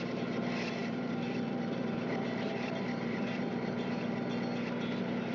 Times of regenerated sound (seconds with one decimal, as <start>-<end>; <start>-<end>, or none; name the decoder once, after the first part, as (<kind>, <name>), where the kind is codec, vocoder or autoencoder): 0.8-4.0 (vocoder, BigVGAN v2)